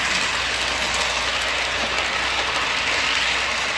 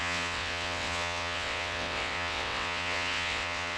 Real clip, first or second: first